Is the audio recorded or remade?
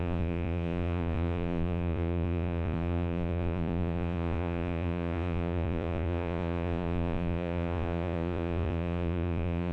remade